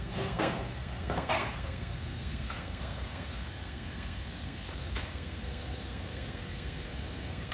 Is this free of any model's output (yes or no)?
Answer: no